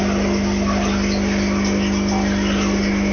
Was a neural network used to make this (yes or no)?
no